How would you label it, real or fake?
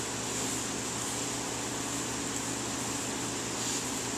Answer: real